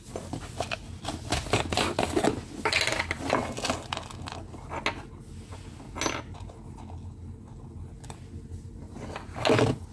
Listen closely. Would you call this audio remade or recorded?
recorded